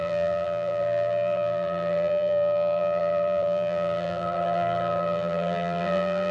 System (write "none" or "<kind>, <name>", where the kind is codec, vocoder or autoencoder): vocoder, BigVGAN v2